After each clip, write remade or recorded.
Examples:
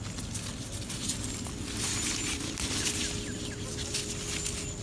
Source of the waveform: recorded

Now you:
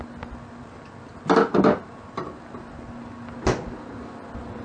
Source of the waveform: recorded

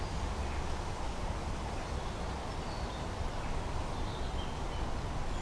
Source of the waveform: recorded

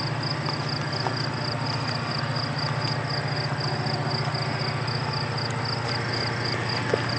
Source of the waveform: recorded